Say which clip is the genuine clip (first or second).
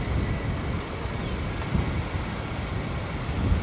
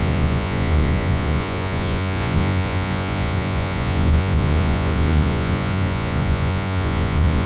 first